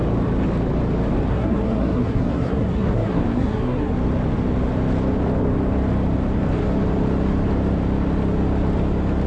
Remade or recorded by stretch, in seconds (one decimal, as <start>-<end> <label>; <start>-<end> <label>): 0.0-1.3 recorded; 1.3-3.9 remade; 3.9-9.3 recorded